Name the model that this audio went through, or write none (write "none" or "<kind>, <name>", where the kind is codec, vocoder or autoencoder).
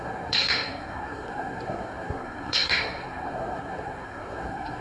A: codec, SNAC